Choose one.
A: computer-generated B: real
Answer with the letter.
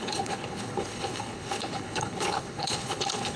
A